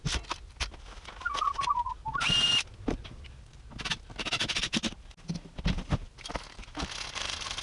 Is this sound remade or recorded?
recorded